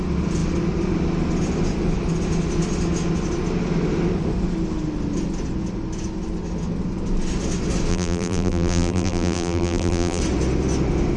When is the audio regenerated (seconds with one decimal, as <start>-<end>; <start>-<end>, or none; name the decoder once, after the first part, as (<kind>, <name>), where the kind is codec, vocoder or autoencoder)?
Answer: 7.9-10.2 (vocoder, BigVGAN v2)

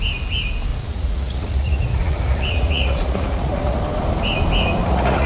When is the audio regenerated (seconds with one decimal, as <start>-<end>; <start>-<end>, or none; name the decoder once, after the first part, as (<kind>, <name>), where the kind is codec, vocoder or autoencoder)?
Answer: 0.7-3.8 (vocoder, Vocos); 4.8-5.3

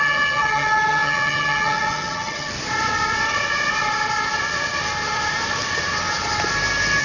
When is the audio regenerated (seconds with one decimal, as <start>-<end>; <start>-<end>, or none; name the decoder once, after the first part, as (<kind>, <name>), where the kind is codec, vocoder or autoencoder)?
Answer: 0.0-2.5 (vocoder, HiFi-GAN)

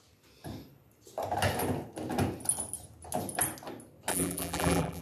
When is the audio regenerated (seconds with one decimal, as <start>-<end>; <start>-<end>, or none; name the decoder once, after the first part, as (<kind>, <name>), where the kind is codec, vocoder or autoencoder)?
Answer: 4.1-5.0 (vocoder, BigVGAN v2)

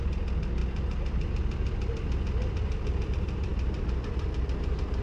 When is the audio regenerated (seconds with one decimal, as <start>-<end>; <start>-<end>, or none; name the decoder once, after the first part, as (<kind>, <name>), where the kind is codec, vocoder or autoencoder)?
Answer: 3.5-4.6 (vocoder, BigVGAN v2)

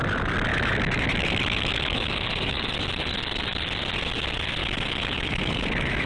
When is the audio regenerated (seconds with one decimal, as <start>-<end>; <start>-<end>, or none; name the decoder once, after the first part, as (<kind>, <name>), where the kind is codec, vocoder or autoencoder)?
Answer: 0.5-2.7 (autoencoder, DAC-VAE); 4.6-6.1

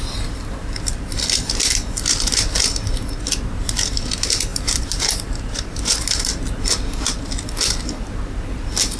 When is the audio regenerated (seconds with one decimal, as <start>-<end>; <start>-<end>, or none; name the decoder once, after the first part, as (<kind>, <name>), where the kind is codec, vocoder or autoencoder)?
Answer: 4.5-6.2 (vocoder, BigVGAN v2)